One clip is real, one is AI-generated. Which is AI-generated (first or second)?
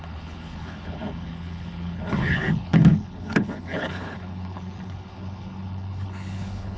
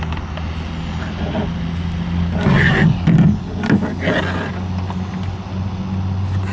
first